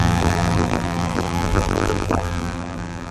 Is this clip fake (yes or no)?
yes